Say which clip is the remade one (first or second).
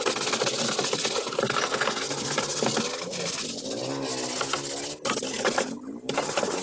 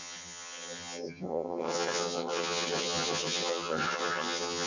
second